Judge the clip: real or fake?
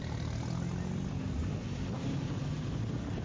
real